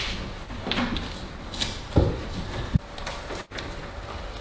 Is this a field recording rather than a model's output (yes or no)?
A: yes